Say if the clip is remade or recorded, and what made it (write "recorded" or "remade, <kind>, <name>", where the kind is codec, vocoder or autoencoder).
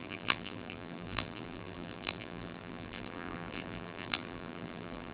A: remade, vocoder, BigVGAN v2